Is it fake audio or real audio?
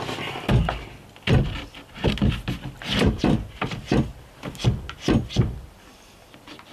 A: real